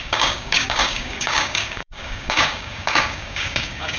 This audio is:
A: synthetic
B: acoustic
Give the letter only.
A